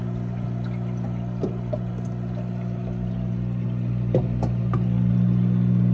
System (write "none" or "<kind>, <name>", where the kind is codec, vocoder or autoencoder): none